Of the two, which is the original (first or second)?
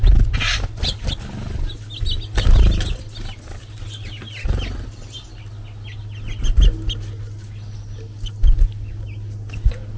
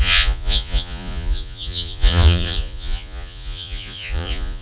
first